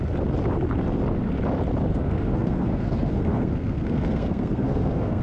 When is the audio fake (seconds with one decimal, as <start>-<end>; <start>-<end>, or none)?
1.9-5.2